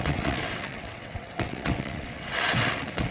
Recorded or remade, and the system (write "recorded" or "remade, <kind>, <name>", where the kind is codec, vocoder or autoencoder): remade, vocoder, WaveNeXt